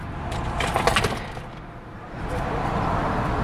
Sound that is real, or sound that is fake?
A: fake